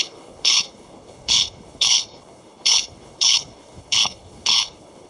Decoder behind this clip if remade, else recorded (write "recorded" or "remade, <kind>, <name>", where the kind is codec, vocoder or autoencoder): remade, codec, HILCodec